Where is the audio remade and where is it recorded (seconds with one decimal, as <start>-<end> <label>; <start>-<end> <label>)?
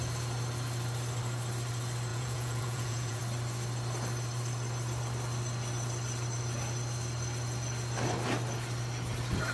0.0-2.1 recorded; 2.1-3.2 remade; 3.2-9.5 recorded